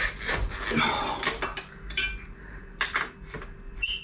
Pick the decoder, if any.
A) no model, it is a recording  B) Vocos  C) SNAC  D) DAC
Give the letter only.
A